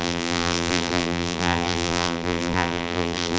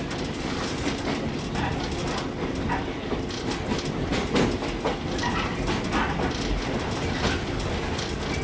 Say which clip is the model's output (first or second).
first